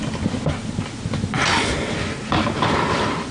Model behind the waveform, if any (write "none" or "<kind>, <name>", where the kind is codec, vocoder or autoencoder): none